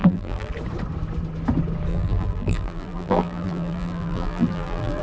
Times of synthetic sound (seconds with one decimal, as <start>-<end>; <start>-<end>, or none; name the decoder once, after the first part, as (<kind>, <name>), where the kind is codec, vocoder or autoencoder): 0.0-0.5 (vocoder, BigVGAN v2); 1.9-5.0